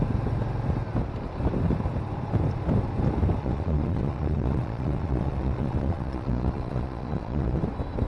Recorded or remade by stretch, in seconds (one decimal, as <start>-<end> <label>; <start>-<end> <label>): 0.0-3.4 recorded; 3.4-7.6 remade; 7.6-8.1 recorded